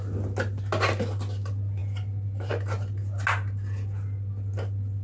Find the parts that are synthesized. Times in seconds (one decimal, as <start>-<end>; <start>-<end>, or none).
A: none